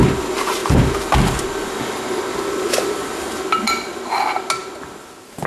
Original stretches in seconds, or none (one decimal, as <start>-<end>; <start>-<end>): 0.0-5.5